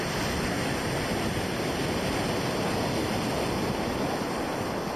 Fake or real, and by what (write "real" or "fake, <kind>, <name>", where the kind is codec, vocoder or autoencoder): real